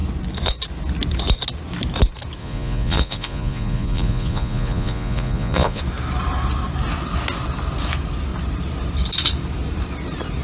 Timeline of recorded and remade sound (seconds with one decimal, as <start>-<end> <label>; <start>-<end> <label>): 0.0-2.4 recorded; 2.4-5.8 remade; 5.8-10.4 recorded